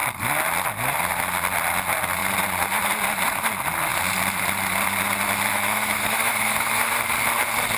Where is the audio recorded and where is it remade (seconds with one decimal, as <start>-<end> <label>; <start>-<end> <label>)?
0.0-5.5 recorded; 5.5-7.0 remade; 7.0-7.8 recorded

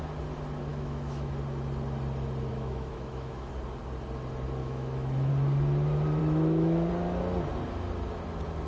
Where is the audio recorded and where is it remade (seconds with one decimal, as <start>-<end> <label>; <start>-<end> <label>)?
0.0-0.7 recorded; 0.7-1.3 remade; 1.3-2.5 recorded; 2.5-3.5 remade; 3.5-4.6 recorded; 4.6-5.3 remade; 5.3-6.2 recorded; 6.2-6.9 remade; 6.9-8.7 recorded

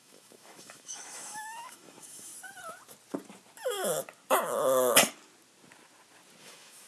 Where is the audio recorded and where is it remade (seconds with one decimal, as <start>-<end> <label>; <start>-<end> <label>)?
0.0-2.3 remade; 2.3-6.4 recorded; 6.4-6.9 remade

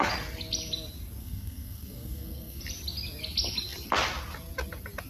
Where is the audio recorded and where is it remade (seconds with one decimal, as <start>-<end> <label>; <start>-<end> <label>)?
0.0-1.2 recorded; 1.2-2.6 remade; 2.6-5.1 recorded

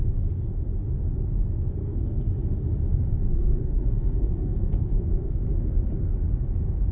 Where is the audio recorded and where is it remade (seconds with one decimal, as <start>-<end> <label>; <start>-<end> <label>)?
0.0-1.8 recorded; 1.8-2.3 remade; 2.3-3.3 recorded; 3.3-5.4 remade; 5.4-6.9 recorded

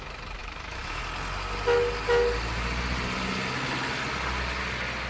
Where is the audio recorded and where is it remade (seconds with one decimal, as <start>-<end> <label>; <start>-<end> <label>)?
0.0-0.4 recorded; 0.4-1.0 remade; 1.0-5.1 recorded